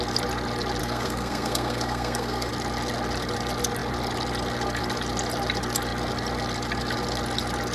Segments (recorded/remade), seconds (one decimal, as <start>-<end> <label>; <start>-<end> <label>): 0.0-0.8 recorded; 0.8-2.5 remade; 2.5-7.7 recorded